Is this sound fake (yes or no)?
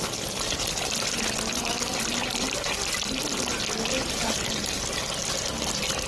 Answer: no